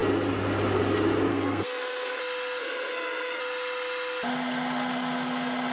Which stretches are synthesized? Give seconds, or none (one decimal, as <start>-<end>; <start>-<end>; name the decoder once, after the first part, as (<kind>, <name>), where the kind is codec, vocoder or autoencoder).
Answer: 1.3-2.2 (codec, SNAC); 2.6-3.4